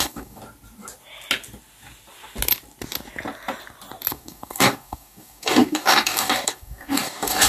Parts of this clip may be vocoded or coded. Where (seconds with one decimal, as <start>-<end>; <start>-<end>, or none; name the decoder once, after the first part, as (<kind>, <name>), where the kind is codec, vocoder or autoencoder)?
0.0-0.4 (codec, DAC); 4.1-7.5

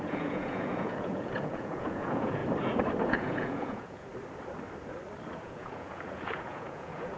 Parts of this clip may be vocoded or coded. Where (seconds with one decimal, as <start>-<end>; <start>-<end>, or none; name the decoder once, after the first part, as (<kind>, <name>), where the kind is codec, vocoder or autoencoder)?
0.0-2.4 (vocoder, Vocos); 3.0-4.1; 5.4-7.2

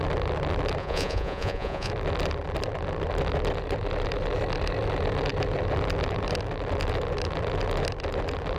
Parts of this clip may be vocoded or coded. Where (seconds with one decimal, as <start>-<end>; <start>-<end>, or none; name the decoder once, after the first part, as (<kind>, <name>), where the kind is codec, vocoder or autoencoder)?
0.8-1.9 (vocoder, Vocos)

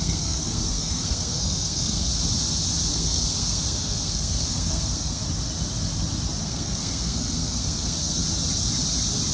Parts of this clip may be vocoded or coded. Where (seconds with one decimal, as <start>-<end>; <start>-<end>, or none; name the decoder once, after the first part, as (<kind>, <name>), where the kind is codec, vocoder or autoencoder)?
0.0-2.1 (codec, SNAC); 2.9-5.2; 6.4-8.2

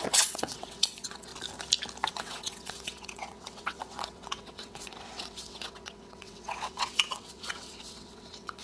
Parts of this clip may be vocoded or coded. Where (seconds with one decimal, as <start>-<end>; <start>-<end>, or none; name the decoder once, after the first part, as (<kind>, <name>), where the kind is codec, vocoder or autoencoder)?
0.0-1.3 (vocoder, WaveNeXt); 2.1-8.6